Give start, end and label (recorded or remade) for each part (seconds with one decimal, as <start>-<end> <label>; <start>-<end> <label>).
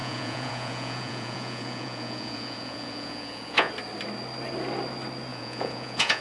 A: 0.0-3.7 remade; 3.7-5.3 recorded; 5.3-6.2 remade